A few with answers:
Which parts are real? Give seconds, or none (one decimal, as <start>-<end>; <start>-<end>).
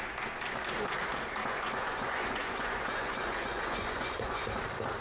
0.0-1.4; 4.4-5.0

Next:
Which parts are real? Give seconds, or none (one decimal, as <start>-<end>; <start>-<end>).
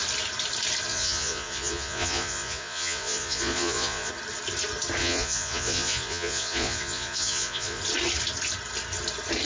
0.0-0.9; 4.1-5.0; 7.8-9.4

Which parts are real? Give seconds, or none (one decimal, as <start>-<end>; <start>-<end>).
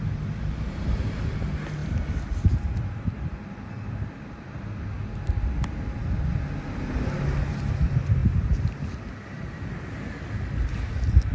0.0-11.3